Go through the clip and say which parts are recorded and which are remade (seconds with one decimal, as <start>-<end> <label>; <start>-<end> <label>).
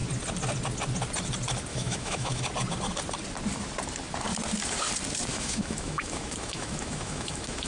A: 0.0-1.7 recorded; 1.7-2.4 remade; 2.4-5.3 recorded; 5.3-7.7 remade